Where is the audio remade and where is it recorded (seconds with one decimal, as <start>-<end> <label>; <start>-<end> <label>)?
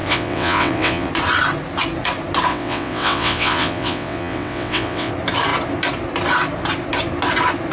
0.0-1.1 remade; 1.1-2.5 recorded; 2.5-5.1 remade; 5.1-7.7 recorded